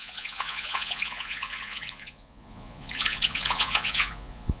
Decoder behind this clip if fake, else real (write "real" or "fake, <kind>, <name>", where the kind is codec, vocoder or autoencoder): fake, vocoder, Vocos